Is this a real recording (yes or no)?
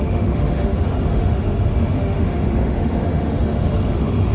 no